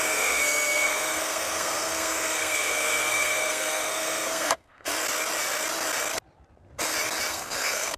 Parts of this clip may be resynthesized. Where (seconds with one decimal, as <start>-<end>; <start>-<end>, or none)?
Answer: 0.0-4.9; 7.3-8.0